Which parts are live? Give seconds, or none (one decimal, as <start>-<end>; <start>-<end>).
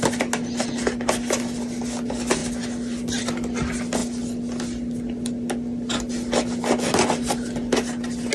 0.0-8.3